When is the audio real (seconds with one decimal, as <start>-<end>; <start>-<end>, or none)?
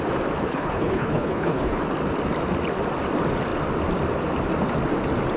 0.0-0.5; 1.8-5.4